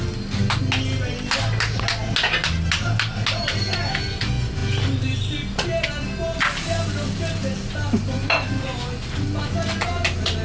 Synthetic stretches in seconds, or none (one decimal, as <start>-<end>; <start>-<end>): none